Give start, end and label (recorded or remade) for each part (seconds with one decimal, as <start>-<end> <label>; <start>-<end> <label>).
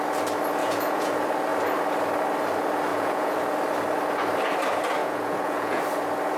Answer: 0.0-0.6 recorded; 0.6-1.1 remade; 1.1-2.9 recorded; 2.9-3.4 remade; 3.4-5.0 recorded; 5.0-5.8 remade; 5.8-6.4 recorded